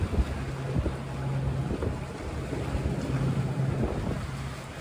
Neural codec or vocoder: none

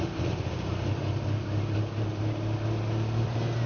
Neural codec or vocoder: vocoder, BigVGAN v2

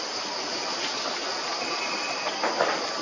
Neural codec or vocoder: none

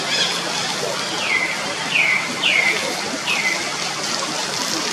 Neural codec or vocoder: none